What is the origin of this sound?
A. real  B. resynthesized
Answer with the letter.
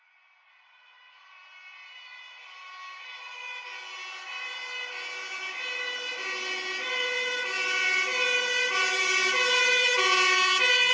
A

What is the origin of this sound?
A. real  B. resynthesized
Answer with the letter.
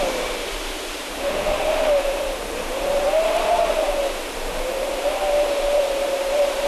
B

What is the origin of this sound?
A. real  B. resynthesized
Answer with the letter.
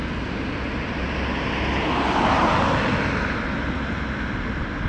A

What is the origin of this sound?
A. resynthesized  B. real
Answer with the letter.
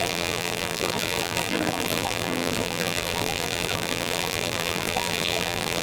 A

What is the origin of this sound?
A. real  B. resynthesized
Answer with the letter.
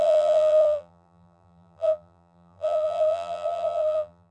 B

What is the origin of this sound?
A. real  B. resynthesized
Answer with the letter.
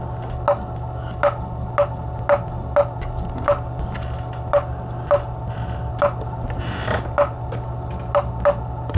A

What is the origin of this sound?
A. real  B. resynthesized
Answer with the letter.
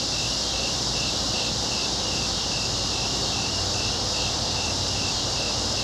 B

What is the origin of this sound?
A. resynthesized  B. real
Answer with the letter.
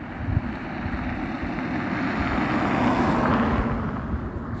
B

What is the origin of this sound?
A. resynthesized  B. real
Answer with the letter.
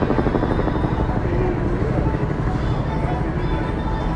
B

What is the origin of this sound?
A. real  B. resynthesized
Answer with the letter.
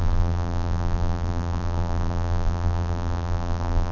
B